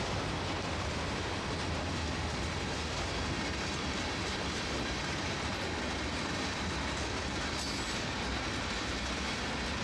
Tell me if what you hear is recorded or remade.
recorded